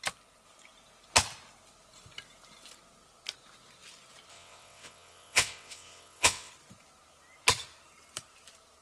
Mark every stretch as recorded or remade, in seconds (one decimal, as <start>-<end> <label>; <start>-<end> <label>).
0.0-4.3 recorded; 4.3-6.5 remade; 6.5-8.8 recorded